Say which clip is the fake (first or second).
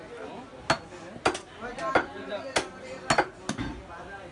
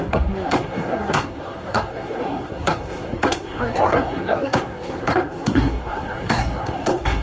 second